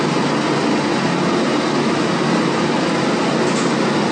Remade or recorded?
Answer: recorded